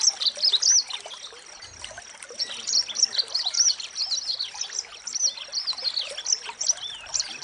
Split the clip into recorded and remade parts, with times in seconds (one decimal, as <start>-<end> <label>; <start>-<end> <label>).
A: 0.0-0.7 remade; 0.7-2.4 recorded; 2.4-4.0 remade; 4.0-7.4 recorded